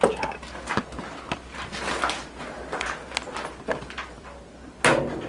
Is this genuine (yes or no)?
yes